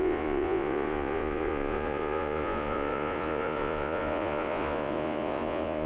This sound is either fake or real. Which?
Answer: fake